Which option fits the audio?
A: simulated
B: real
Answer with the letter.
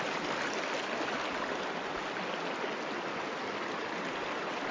B